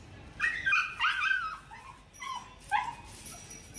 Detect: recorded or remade recorded